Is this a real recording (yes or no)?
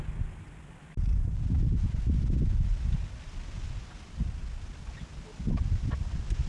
yes